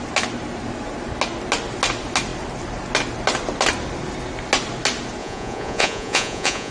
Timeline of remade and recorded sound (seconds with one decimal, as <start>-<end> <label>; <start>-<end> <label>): 0.0-5.2 recorded; 5.2-6.7 remade